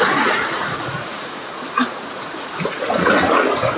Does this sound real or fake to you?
fake